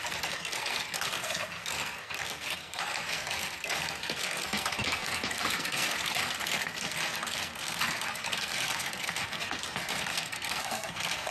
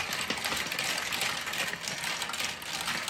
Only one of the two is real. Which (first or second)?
second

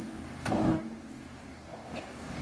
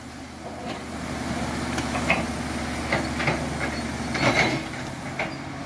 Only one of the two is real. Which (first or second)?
second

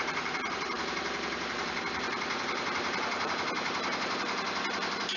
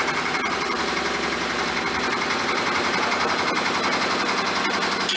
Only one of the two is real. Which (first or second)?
second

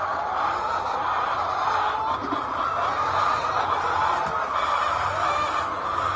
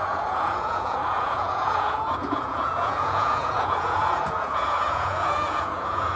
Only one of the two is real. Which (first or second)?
first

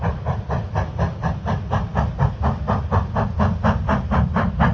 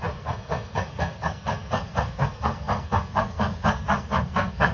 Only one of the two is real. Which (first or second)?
first